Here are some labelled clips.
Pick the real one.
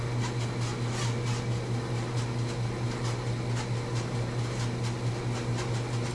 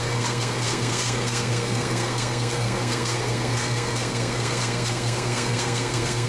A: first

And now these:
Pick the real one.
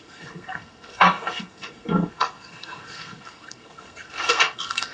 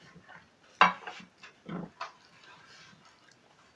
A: second